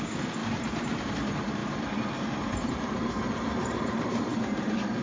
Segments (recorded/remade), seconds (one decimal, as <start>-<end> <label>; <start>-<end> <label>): 0.0-5.0 remade